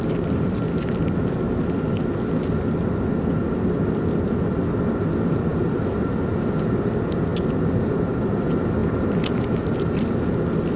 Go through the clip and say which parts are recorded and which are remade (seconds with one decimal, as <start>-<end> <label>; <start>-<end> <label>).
0.0-10.8 recorded

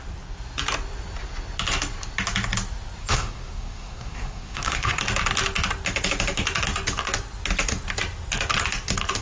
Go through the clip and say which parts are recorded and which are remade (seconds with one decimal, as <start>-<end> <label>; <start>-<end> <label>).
0.0-3.0 recorded; 3.0-5.0 remade; 5.0-9.2 recorded

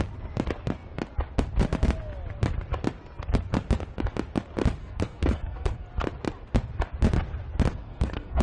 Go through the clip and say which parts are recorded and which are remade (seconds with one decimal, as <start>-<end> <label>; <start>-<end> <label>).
0.0-4.8 recorded; 4.8-5.9 remade; 5.9-7.7 recorded; 7.7-8.4 remade